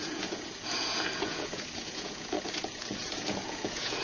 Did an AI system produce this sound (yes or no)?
yes